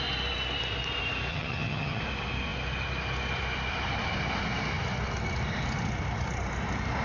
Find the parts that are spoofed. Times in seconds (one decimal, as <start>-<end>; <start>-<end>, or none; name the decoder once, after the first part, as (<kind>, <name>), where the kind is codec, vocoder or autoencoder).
1.3-2.0 (vocoder, HiFi-GAN)